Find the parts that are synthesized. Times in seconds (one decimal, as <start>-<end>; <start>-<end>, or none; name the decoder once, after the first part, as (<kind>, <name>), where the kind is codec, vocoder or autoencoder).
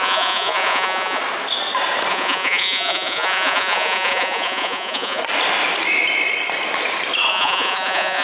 0.0-1.2 (vocoder, Vocos); 2.1-5.2; 7.3-8.2